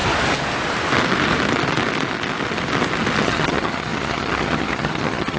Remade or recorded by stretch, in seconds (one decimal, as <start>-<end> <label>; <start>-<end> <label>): 0.0-3.2 recorded; 3.2-5.4 remade